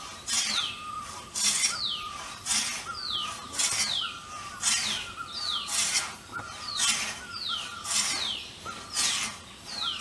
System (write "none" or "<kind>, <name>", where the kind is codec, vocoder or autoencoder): none